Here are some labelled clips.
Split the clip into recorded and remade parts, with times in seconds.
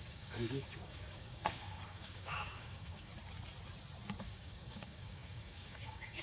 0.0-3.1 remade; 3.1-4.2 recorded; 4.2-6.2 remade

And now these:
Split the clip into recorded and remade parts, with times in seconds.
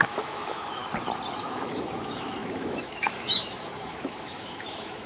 0.0-0.8 remade; 0.8-1.4 recorded; 1.4-5.1 remade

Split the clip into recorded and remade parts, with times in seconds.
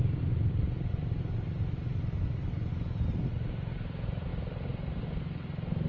0.0-2.7 remade; 2.7-5.9 recorded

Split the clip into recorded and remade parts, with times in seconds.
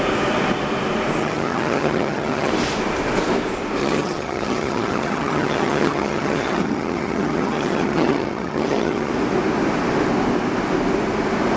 0.0-1.2 recorded; 1.2-2.5 remade; 2.5-3.8 recorded; 3.8-9.1 remade; 9.1-11.6 recorded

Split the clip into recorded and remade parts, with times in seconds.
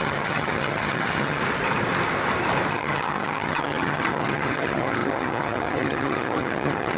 0.0-1.4 remade; 1.4-2.7 recorded; 2.7-7.0 remade